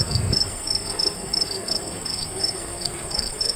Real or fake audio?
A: fake